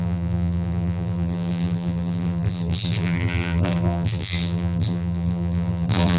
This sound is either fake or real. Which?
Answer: fake